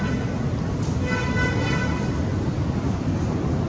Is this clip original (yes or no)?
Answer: yes